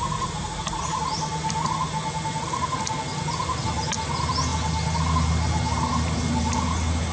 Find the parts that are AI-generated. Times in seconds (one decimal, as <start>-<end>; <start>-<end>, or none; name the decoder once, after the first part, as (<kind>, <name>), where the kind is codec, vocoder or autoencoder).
none

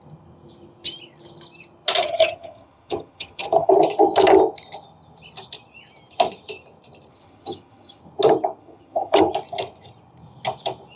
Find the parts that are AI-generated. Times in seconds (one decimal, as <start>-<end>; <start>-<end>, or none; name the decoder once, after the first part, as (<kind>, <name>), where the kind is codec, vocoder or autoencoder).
2.0-3.7 (vocoder, HiFi-GAN); 7.1-8.0; 8.6-9.2